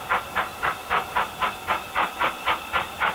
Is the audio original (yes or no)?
yes